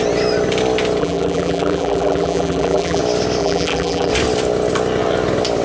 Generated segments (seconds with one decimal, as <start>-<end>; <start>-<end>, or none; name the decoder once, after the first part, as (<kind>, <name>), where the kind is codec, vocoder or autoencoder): 1.0-3.0 (vocoder, BigVGAN v2); 3.4-4.1